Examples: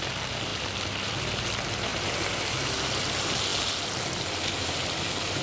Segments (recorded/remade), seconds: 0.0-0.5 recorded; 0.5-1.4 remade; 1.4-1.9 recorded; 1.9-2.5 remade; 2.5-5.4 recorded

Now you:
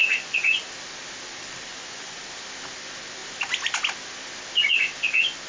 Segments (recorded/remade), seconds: 0.0-0.6 remade; 0.6-1.7 recorded; 1.7-2.2 remade; 2.2-5.5 recorded

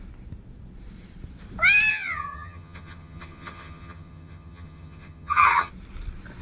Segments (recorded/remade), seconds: 0.0-1.9 recorded; 1.9-5.7 remade; 5.7-6.4 recorded

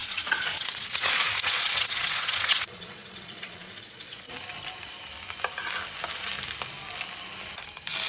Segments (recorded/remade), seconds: 0.0-4.3 remade; 4.3-8.1 recorded